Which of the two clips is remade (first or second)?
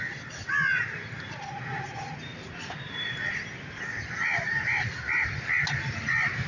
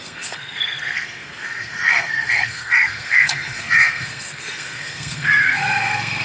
second